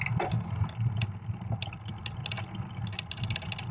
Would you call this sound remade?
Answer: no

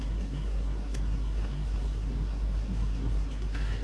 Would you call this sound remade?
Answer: yes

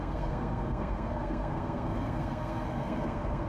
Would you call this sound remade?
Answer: yes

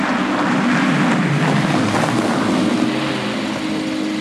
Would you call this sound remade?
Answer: no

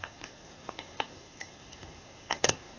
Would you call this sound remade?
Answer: yes